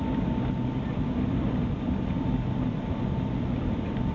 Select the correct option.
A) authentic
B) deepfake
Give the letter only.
B